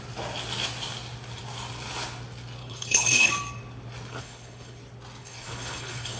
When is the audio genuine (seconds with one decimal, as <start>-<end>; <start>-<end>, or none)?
0.0-2.6; 3.3-4.1; 4.8-5.2